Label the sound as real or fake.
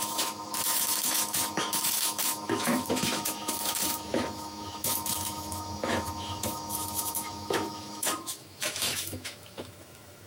fake